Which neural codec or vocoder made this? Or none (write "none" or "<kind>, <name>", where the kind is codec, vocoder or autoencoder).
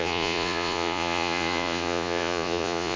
vocoder, Vocos